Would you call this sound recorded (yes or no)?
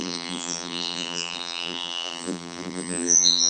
no